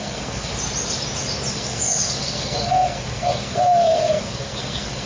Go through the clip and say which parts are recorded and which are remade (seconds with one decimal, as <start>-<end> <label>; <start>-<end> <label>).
0.0-0.5 remade; 0.5-1.5 recorded; 1.5-5.1 remade